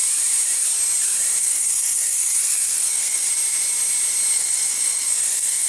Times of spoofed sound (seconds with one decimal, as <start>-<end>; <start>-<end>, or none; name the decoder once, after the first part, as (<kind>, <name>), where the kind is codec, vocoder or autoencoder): 1.4-3.3 (codec, SNAC); 4.3-5.7